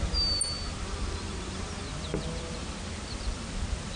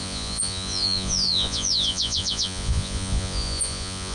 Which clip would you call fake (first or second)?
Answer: second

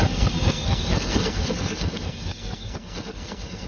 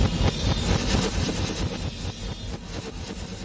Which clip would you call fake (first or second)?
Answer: first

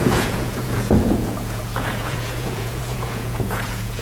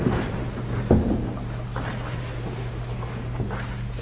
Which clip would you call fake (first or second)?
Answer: first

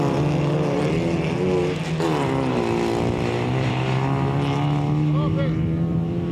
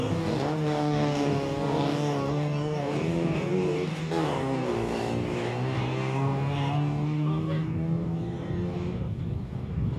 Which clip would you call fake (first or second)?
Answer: second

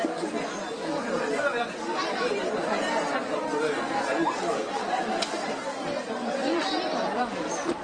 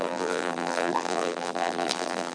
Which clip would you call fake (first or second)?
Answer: second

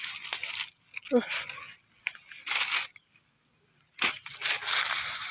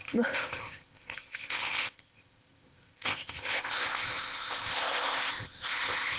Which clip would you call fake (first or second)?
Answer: second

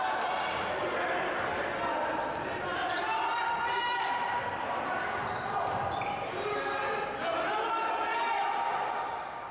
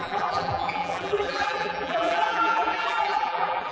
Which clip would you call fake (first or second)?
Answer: second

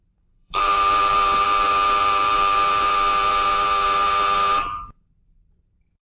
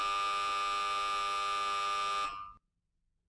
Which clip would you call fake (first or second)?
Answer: first